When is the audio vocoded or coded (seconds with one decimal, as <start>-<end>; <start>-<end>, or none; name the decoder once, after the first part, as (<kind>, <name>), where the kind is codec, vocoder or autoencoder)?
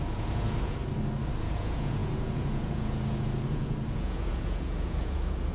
0.0-0.8 (vocoder, Vocos); 1.4-5.5